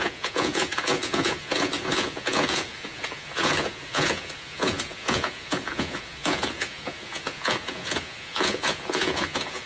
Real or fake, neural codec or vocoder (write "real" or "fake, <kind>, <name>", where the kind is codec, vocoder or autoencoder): fake, vocoder, Vocos